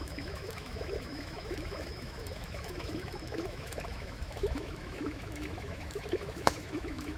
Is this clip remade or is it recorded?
remade